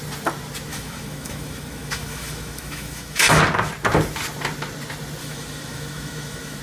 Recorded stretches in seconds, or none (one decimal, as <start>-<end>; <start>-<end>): 0.0-0.7; 3.4-5.2